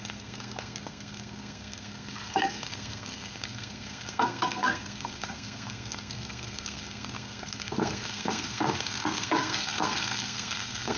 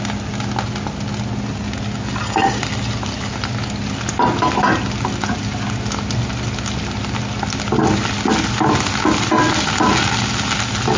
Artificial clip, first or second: first